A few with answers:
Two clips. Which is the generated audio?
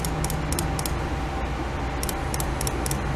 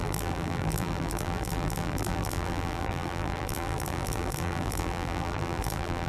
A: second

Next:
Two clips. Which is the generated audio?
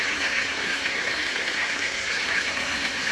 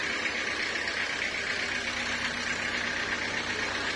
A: first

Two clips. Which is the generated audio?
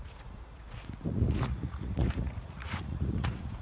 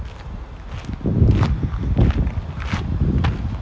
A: first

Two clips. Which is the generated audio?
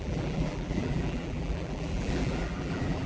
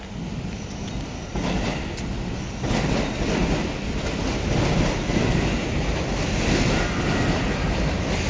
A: first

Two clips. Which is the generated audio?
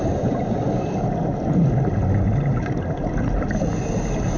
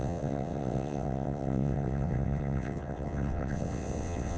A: second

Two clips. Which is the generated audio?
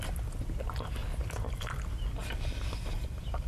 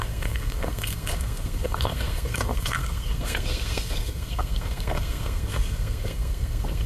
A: second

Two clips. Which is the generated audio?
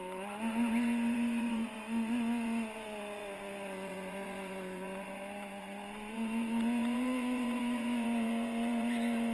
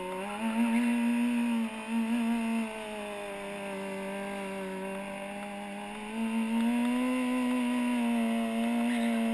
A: first